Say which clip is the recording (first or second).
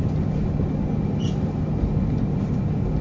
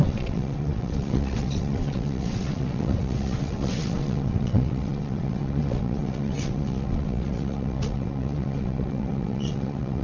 first